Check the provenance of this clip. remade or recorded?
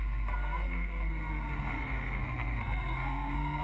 remade